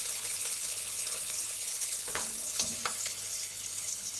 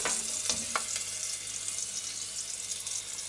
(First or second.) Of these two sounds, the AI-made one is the first